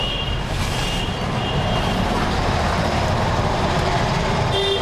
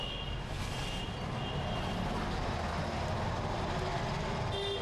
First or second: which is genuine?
second